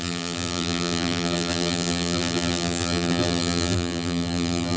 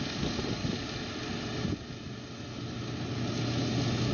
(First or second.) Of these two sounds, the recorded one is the second